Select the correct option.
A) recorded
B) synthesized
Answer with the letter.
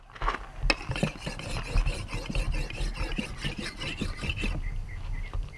A